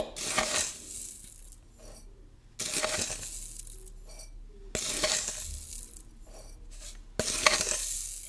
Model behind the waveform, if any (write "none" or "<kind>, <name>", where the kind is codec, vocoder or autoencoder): none